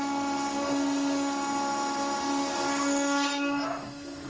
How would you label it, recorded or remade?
recorded